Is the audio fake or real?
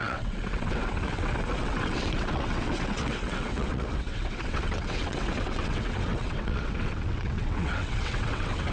fake